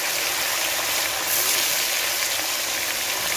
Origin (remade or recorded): recorded